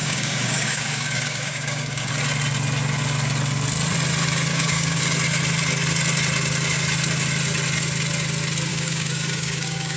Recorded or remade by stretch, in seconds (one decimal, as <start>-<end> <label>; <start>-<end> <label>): 0.0-2.1 remade; 2.1-4.5 recorded; 4.5-5.0 remade; 5.0-8.7 recorded; 8.7-10.0 remade